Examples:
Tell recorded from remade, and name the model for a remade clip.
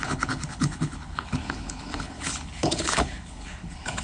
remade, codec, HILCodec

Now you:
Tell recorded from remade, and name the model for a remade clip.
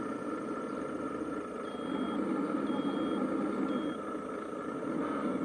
recorded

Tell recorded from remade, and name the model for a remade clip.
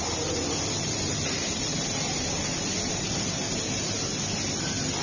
recorded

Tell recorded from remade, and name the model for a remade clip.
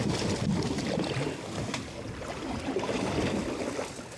recorded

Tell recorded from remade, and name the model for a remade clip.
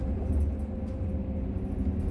recorded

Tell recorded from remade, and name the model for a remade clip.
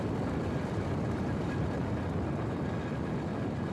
recorded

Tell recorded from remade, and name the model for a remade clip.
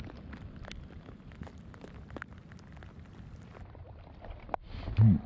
recorded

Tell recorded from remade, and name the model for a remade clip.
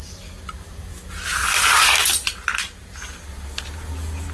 recorded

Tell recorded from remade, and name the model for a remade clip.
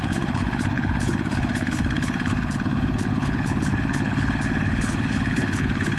remade, codec, HILCodec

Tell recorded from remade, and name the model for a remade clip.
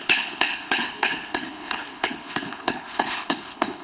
remade, codec, HILCodec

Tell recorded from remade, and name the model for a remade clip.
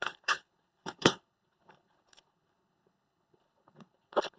remade, codec, HILCodec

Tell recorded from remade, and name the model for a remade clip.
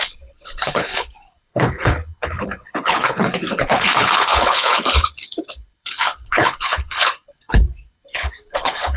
remade, codec, HILCodec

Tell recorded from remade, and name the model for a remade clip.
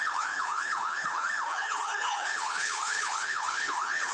remade, codec, HILCodec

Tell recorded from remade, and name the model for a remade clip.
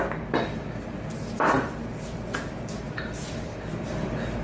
recorded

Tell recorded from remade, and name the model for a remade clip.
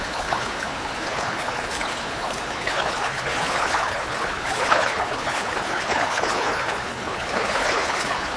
remade, codec, HILCodec